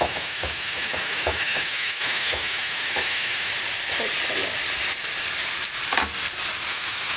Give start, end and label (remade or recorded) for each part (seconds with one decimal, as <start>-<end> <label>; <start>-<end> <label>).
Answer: 0.0-3.5 remade; 3.5-6.7 recorded; 6.7-7.2 remade